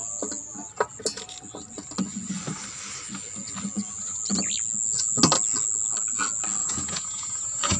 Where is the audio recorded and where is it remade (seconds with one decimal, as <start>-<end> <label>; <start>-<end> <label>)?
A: 0.0-6.6 recorded; 6.6-7.8 remade